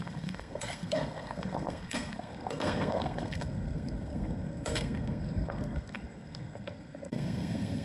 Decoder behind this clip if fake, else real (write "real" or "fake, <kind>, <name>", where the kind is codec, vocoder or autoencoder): fake, codec, SNAC